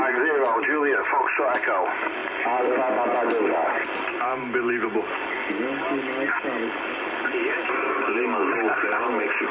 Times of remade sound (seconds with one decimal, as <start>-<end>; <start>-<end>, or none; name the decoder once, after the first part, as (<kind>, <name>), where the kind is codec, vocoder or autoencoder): none